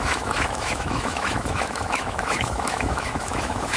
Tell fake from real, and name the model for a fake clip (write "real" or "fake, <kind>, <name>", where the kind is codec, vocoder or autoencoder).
fake, autoencoder, DAC-VAE